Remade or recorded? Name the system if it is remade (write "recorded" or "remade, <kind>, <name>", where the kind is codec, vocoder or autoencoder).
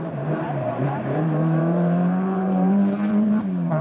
remade, vocoder, BigVGAN v2